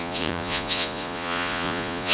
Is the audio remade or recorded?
remade